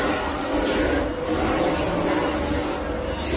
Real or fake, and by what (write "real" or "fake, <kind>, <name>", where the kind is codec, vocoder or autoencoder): real